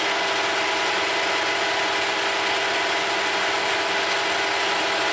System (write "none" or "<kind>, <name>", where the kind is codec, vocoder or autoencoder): none